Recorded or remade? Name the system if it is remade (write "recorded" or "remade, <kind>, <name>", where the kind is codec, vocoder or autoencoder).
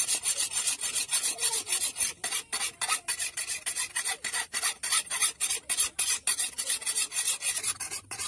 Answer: recorded